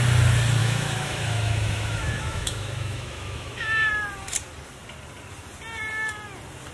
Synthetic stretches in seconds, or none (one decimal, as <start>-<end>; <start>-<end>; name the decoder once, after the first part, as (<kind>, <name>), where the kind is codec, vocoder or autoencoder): 0.6-3.9 (autoencoder, DAC-VAE)